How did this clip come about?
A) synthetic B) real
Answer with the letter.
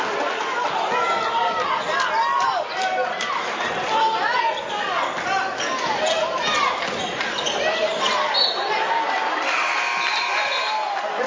B